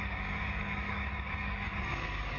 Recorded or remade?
remade